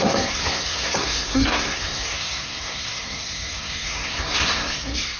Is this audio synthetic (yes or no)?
yes